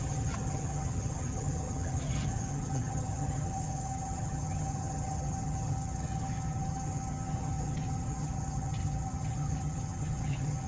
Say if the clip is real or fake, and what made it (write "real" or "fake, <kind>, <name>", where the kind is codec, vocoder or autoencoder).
fake, vocoder, HiFi-GAN